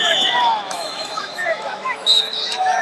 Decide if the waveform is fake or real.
fake